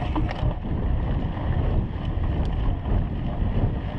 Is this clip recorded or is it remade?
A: recorded